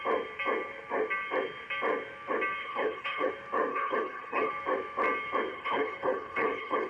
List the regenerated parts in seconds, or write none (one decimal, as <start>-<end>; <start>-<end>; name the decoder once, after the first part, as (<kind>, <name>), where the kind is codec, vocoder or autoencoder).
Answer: 2.6-3.3 (codec, HILCodec); 3.7-4.5; 5.5-6.9